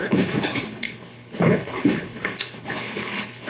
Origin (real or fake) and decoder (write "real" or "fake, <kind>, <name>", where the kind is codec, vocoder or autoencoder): fake, codec, HILCodec